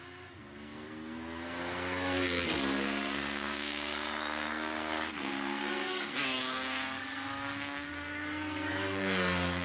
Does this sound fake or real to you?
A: fake